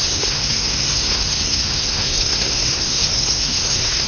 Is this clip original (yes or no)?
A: no